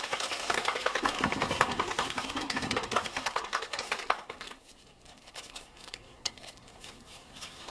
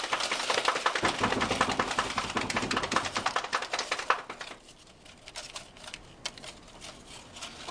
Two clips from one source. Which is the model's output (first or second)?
first